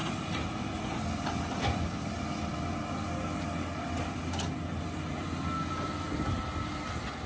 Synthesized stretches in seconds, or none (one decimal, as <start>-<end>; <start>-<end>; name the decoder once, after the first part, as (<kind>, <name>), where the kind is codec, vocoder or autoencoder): 0.0-2.1 (vocoder, BigVGAN v2)